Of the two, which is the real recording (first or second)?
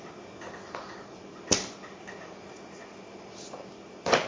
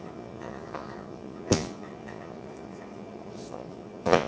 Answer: first